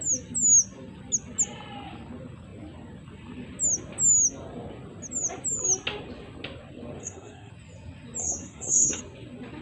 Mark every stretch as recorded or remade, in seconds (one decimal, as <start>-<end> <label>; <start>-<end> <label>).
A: 0.0-7.0 recorded; 7.0-7.5 remade; 7.5-8.2 recorded; 8.2-9.0 remade; 9.0-9.6 recorded